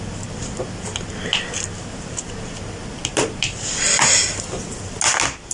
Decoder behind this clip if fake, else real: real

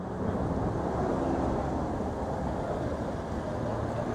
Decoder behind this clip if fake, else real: real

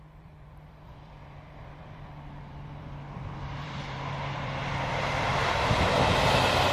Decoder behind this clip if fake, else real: fake, vocoder, BigVGAN v2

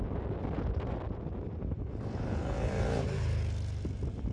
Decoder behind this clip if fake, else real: real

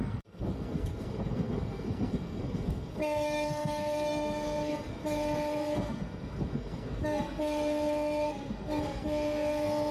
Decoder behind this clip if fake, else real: fake, codec, SNAC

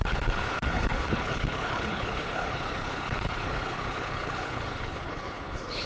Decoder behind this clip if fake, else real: fake, codec, HILCodec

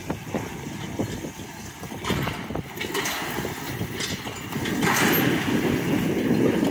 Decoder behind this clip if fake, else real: real